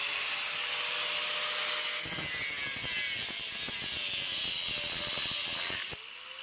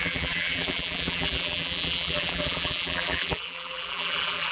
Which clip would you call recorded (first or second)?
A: first